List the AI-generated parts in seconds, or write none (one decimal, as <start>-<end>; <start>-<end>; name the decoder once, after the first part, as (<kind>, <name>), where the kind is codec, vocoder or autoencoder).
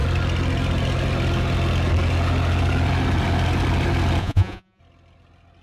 4.2-4.8 (vocoder, Vocos)